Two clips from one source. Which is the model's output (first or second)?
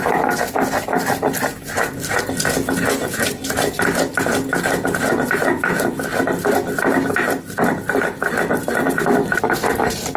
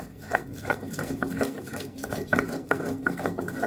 second